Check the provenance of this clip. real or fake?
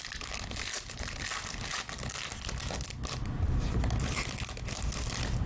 real